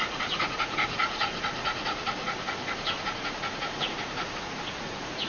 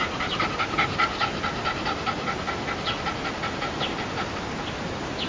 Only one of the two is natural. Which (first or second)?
second